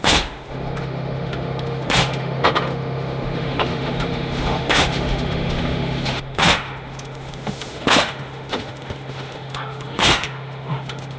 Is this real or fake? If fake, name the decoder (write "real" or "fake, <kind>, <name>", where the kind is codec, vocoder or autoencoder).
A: fake, autoencoder, DAC-VAE